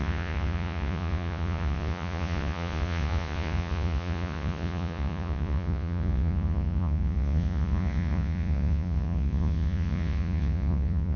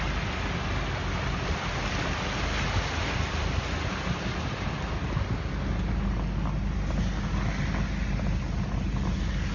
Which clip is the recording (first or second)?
second